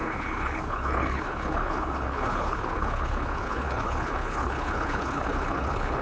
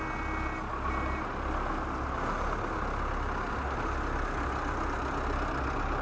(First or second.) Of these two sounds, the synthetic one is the first